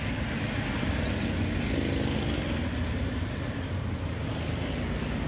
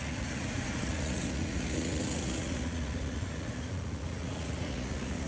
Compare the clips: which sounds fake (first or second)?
second